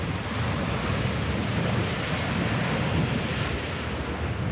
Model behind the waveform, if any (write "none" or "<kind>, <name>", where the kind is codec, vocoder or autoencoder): none